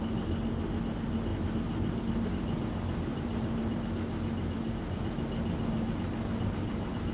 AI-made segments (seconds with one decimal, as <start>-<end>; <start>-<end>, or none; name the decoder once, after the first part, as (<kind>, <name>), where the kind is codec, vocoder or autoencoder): 1.3-2.0 (vocoder, BigVGAN v2); 3.1-3.8